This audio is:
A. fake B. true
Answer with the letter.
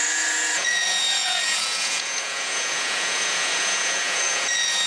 A